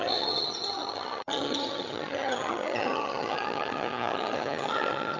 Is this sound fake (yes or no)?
yes